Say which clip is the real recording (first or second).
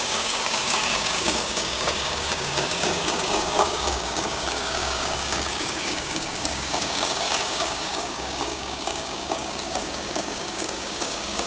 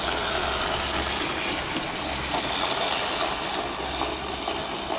second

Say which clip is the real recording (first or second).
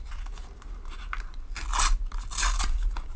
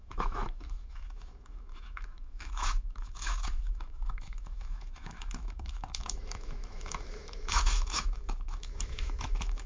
first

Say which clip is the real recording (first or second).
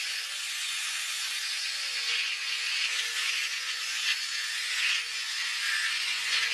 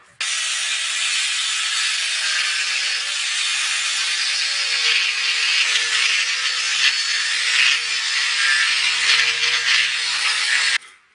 second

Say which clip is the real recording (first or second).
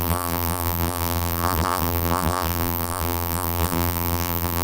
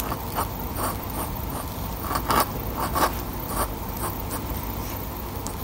second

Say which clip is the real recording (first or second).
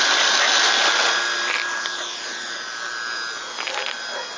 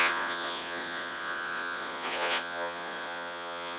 first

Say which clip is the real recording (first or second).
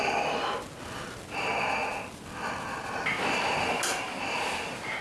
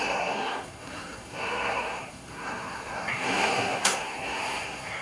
first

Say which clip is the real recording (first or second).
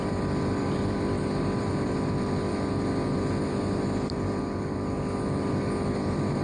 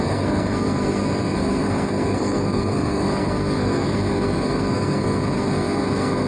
first